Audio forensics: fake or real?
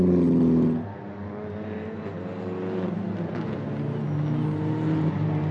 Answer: real